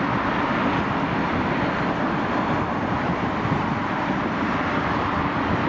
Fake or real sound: real